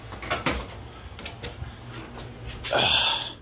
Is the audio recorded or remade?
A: recorded